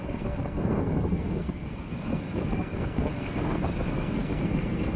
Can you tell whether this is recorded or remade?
remade